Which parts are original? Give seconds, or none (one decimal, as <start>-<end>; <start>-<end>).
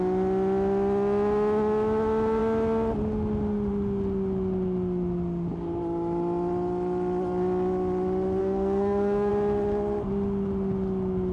0.0-8.4; 9.3-11.3